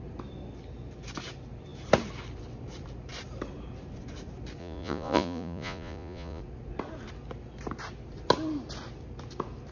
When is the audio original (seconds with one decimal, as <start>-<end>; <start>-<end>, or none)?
0.0-4.6; 6.4-9.7